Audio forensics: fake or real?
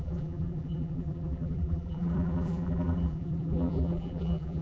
fake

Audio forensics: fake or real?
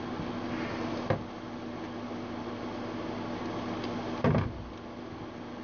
real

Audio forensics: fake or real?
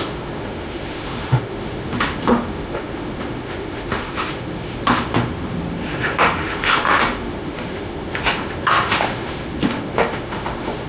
fake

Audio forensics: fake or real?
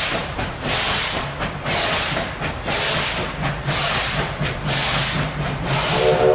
real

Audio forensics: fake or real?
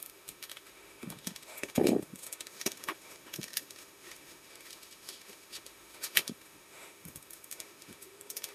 fake